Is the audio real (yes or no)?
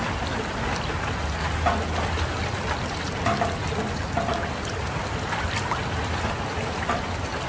yes